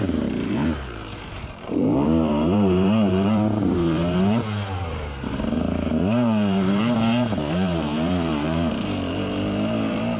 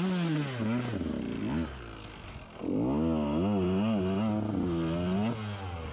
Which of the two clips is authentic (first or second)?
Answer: second